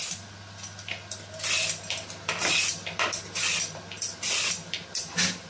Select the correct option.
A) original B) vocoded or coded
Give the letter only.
A